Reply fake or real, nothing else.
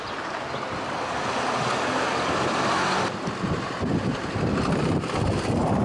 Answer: real